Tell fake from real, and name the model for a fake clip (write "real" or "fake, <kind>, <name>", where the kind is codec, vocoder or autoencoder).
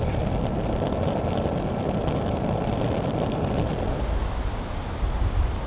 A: real